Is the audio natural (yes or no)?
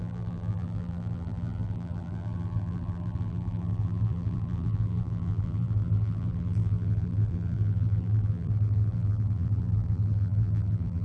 no